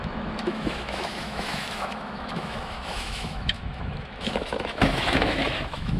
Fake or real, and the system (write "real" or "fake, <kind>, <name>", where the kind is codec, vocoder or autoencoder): fake, autoencoder, DAC-VAE